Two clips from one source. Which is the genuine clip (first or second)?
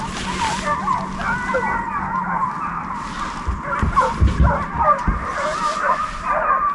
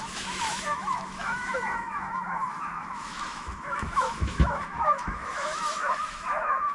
first